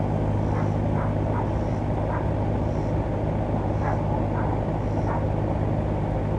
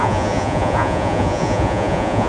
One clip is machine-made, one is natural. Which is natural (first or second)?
first